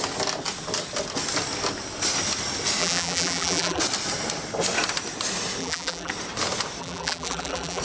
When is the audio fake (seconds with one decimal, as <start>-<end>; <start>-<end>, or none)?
2.8-3.8; 5.6-6.1; 6.8-7.8